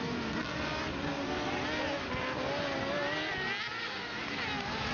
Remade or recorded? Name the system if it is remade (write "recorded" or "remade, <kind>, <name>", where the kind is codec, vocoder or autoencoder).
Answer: recorded